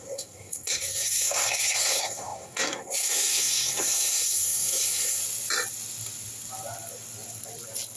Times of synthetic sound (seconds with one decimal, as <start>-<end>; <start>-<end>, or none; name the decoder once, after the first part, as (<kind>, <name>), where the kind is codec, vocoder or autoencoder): 0.0-5.2 (codec, SNAC)